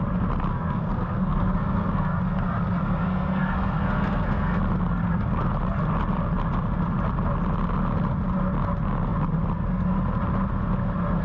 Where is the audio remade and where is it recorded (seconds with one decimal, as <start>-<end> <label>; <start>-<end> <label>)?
0.0-0.5 recorded; 0.5-2.2 remade; 2.2-2.8 recorded; 2.8-4.6 remade; 4.6-11.2 recorded